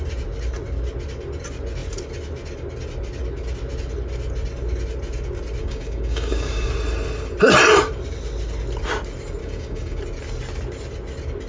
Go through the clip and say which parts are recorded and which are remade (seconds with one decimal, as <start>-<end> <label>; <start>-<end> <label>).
0.0-5.6 recorded; 5.6-6.7 remade; 6.7-9.4 recorded; 9.4-10.0 remade; 10.0-11.5 recorded